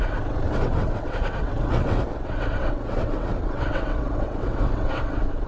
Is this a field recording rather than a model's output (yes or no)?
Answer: no